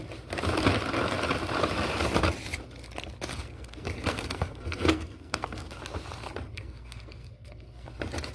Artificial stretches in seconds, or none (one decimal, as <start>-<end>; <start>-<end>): 3.3-5.8; 6.5-7.9

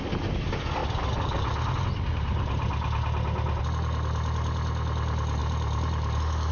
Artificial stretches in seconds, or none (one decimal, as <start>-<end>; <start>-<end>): none

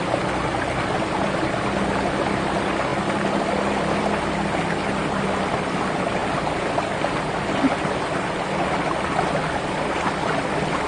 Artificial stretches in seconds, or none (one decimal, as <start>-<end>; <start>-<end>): none

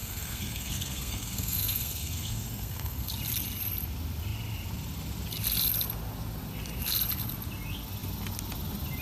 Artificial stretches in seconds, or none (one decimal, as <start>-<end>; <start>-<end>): 0.0-3.1

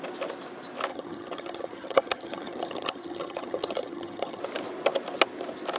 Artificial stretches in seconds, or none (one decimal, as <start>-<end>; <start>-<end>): 0.9-4.4